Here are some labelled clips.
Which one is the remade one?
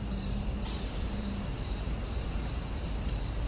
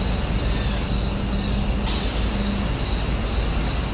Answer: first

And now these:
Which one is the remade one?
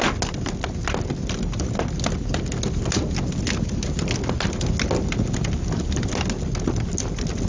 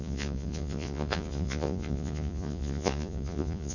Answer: second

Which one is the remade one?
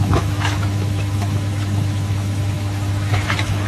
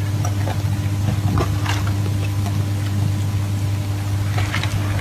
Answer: first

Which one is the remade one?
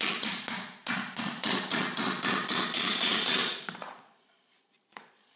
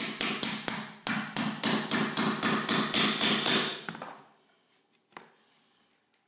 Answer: first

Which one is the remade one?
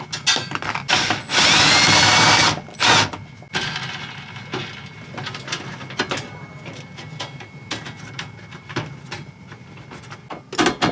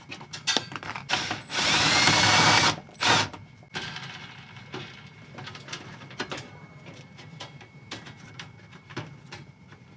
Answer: second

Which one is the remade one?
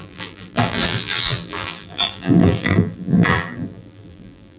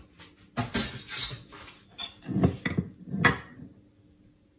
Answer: first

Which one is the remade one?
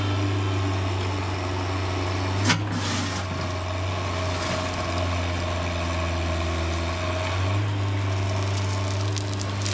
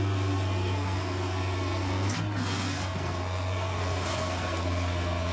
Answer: second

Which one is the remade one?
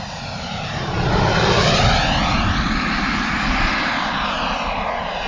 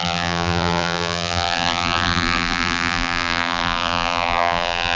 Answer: second